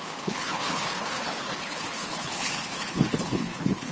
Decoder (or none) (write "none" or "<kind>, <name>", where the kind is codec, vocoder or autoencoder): codec, HILCodec